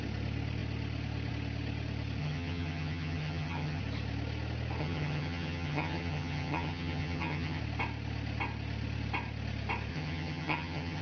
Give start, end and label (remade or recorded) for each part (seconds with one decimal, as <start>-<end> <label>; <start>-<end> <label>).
0.0-2.2 recorded; 2.2-3.8 remade; 3.8-4.8 recorded; 4.8-7.6 remade; 7.6-9.9 recorded; 9.9-11.0 remade

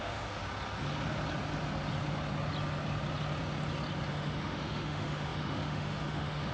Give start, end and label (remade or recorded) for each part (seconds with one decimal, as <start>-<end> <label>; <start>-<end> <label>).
0.0-0.4 remade; 0.4-4.1 recorded; 4.1-6.5 remade

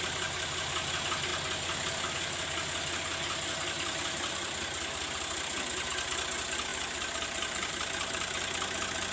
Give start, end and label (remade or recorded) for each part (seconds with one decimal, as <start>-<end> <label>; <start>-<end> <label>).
0.0-9.1 recorded